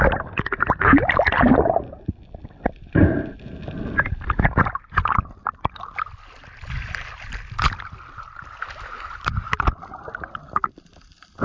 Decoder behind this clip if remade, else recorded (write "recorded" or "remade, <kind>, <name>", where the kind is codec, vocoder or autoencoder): recorded